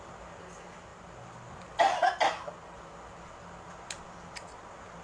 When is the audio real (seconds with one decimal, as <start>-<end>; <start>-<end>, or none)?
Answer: 0.0-5.0